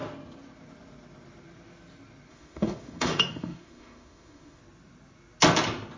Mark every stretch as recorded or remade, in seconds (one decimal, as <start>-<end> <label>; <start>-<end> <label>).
0.0-2.3 recorded; 2.3-4.6 remade; 4.6-6.0 recorded